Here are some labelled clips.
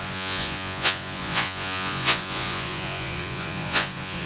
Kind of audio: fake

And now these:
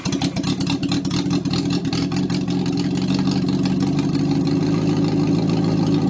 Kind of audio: real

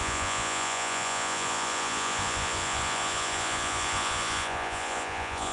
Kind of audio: fake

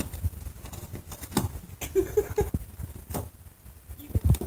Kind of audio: real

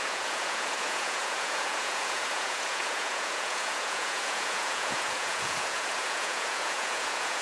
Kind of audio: fake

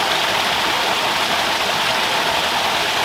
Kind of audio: real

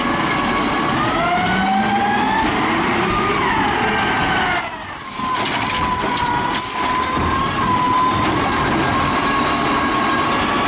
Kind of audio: real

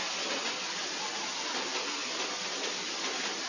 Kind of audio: real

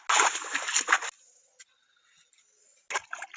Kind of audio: real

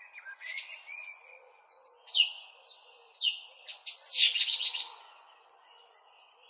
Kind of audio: fake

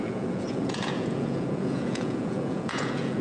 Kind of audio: fake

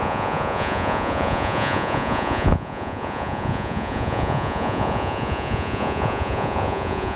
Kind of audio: fake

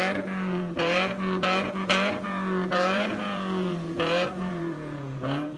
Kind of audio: fake